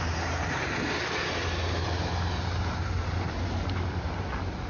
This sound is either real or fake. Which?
real